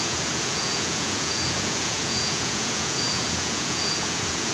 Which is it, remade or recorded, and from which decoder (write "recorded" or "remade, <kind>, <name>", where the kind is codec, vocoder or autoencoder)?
remade, vocoder, Vocos